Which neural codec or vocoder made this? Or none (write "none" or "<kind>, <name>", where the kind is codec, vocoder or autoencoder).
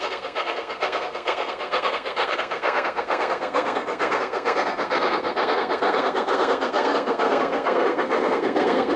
codec, SNAC